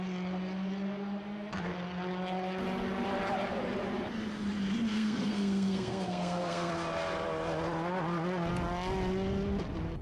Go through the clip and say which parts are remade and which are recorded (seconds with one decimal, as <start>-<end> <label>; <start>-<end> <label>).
0.0-4.9 recorded; 4.9-6.7 remade; 6.7-10.0 recorded